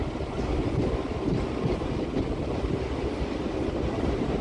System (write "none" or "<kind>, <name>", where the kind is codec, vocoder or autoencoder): none